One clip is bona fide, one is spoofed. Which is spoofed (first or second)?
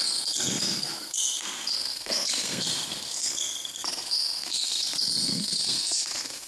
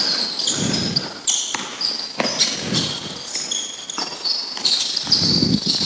first